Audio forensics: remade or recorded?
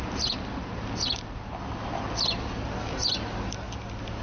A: recorded